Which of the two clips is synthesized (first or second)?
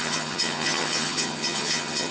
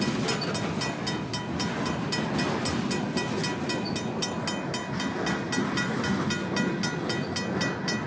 first